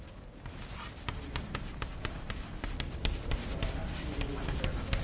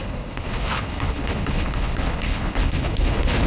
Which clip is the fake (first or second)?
second